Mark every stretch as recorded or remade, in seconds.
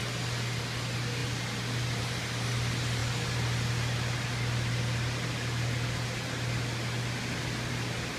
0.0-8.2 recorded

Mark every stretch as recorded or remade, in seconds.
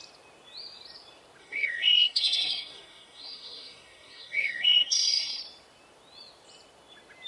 0.0-1.4 recorded; 1.4-5.4 remade; 5.4-7.3 recorded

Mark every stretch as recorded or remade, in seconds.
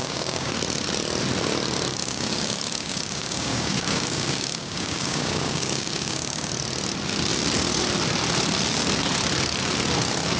0.0-0.5 remade; 0.5-1.9 recorded; 1.9-6.5 remade; 6.5-10.4 recorded